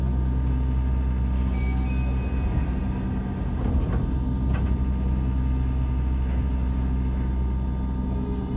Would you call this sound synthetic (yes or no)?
no